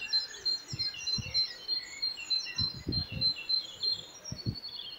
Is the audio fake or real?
real